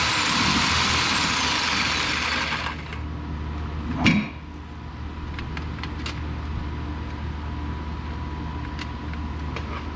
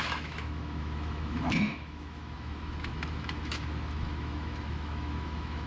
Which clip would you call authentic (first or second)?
first